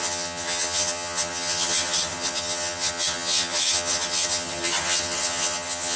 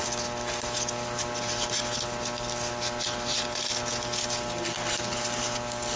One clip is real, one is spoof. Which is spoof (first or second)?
first